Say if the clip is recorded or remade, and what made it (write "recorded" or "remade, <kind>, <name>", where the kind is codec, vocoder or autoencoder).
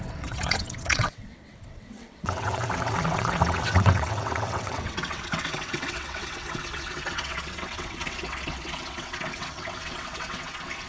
remade, vocoder, WaveNeXt